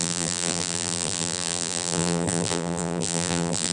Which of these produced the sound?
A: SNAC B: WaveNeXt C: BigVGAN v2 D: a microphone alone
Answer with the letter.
C